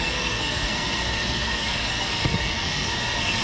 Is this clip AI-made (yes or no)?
yes